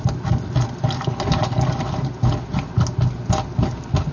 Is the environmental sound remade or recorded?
recorded